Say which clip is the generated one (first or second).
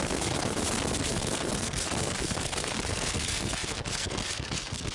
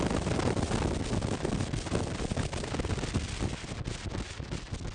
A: first